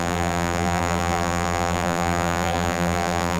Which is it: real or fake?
fake